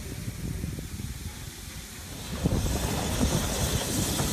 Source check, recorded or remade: recorded